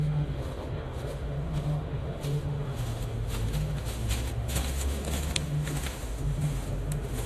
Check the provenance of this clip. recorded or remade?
remade